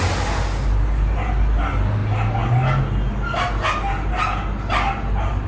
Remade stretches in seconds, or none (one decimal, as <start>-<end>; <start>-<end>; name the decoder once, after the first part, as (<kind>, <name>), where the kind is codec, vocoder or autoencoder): none